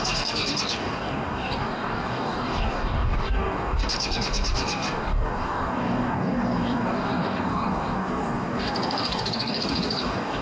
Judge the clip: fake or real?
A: fake